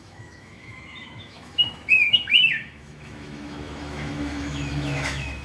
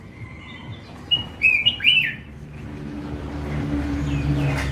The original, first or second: second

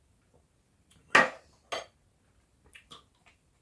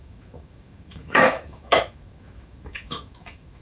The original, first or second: first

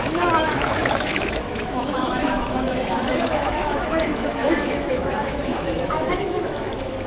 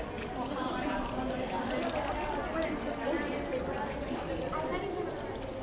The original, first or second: second